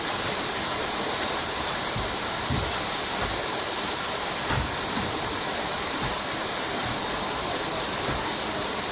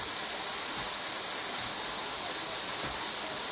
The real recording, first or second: second